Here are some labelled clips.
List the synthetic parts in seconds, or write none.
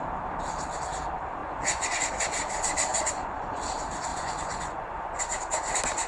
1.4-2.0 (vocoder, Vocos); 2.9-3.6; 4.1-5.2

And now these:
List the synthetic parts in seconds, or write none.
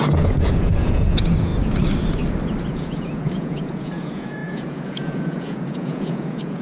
0.0-1.5 (vocoder, Vocos); 2.7-6.6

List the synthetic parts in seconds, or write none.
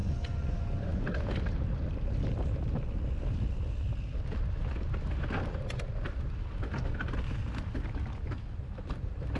0.0-1.0 (vocoder, Vocos)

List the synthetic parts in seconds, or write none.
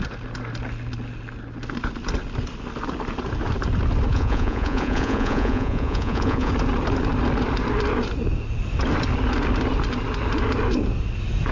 4.1-6.5 (vocoder, Vocos)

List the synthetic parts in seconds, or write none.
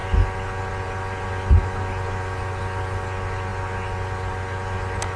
none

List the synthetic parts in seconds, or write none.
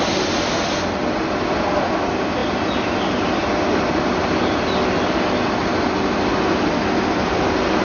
none